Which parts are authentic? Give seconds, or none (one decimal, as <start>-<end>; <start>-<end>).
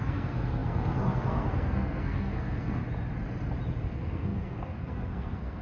2.8-3.8